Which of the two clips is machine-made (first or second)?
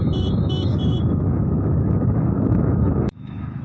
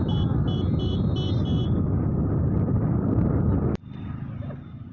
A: first